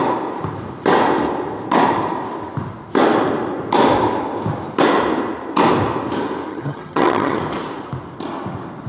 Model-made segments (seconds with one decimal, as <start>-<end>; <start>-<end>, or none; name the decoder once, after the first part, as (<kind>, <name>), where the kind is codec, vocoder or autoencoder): 6.5-7.4 (vocoder, HiFi-GAN)